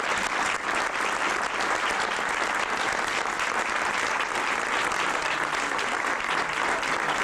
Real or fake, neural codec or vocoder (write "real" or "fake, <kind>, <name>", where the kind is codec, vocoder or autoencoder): real